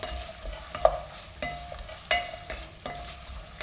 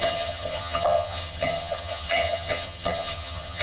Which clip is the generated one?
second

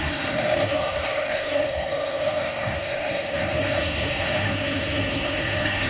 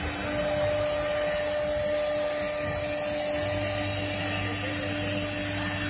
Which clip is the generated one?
first